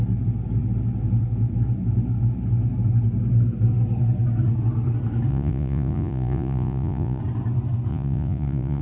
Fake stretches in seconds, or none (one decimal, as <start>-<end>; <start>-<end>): 5.3-7.2; 7.9-8.8